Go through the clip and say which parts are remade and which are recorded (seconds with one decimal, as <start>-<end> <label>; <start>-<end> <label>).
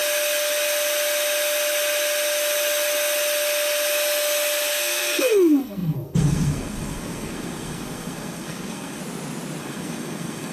0.0-4.7 recorded; 4.7-9.0 remade; 9.0-9.6 recorded; 9.6-10.5 remade